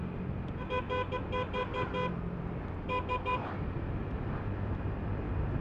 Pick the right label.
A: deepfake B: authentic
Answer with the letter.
B